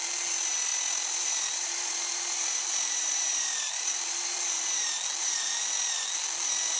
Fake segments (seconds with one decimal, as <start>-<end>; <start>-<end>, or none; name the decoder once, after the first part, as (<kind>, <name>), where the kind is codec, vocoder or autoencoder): 0.7-4.4 (vocoder, BigVGAN v2)